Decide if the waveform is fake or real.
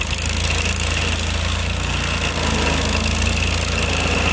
real